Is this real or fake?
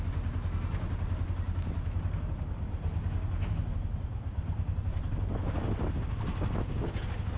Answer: real